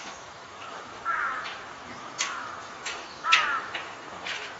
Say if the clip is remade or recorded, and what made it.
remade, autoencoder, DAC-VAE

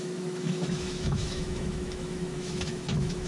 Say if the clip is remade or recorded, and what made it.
remade, autoencoder, DAC-VAE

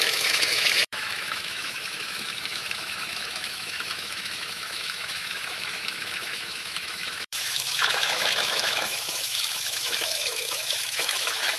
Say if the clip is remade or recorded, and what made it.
remade, autoencoder, DAC-VAE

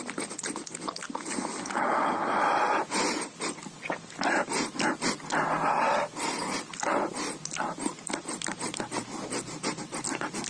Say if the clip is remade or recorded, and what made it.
recorded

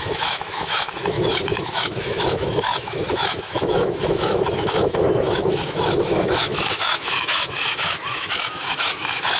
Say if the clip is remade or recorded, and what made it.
remade, autoencoder, DAC-VAE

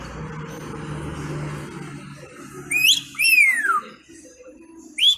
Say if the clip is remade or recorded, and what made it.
recorded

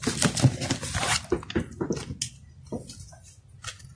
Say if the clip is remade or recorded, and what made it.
recorded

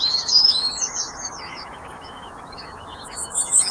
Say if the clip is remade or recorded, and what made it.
remade, autoencoder, DAC-VAE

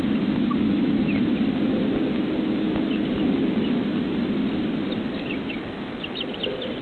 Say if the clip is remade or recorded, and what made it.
recorded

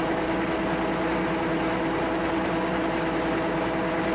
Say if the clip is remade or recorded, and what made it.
recorded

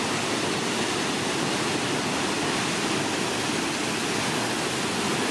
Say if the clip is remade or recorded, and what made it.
recorded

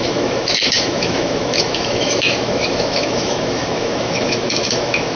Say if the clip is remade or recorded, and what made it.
remade, autoencoder, DAC-VAE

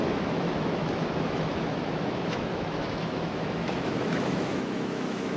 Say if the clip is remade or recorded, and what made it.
remade, autoencoder, DAC-VAE